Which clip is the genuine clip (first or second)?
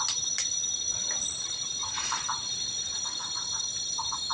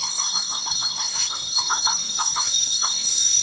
first